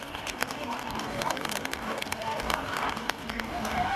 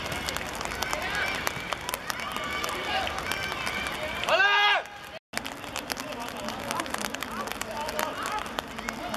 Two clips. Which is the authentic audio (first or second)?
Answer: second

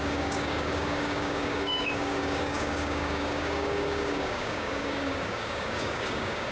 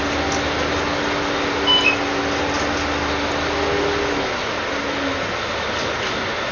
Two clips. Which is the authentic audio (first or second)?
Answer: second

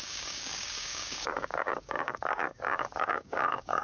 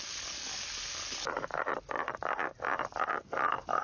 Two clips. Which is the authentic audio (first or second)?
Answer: second